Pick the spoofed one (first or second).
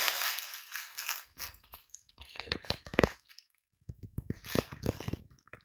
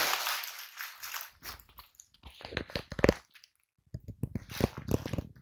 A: first